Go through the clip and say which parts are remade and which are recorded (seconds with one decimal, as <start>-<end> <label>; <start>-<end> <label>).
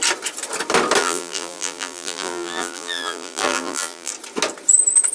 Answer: 0.0-1.0 recorded; 1.0-4.1 remade; 4.1-5.1 recorded